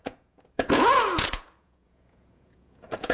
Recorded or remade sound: remade